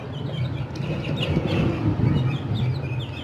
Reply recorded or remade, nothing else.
recorded